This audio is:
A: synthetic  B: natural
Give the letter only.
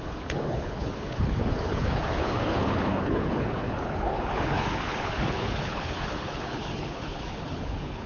A